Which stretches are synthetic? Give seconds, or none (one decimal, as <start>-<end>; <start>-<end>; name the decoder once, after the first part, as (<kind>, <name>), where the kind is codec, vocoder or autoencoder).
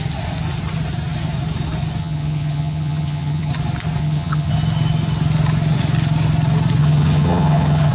2.0-3.5 (vocoder, HiFi-GAN); 4.0-4.5; 6.8-7.9